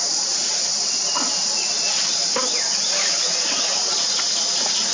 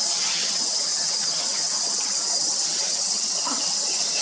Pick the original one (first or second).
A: first